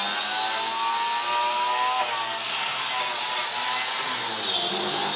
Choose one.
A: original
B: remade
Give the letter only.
A